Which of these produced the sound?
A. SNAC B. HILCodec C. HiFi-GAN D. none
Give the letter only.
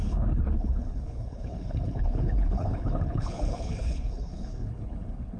B